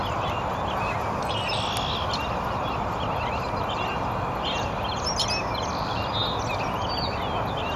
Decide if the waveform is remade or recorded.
recorded